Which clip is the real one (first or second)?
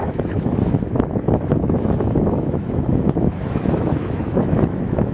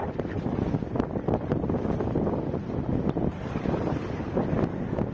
second